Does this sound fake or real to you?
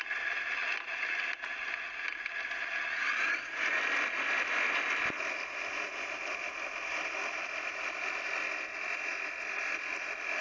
real